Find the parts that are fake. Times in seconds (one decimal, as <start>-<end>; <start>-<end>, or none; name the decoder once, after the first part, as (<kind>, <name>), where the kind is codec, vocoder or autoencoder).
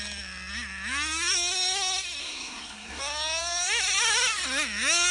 2.2-3.0 (codec, SNAC)